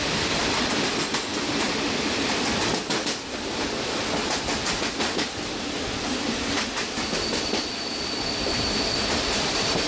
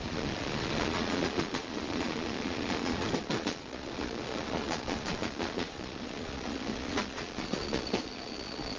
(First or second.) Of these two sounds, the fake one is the second